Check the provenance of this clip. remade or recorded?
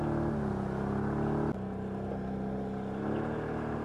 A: recorded